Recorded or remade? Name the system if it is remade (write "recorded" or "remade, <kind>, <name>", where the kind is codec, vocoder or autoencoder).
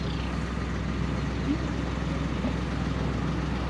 recorded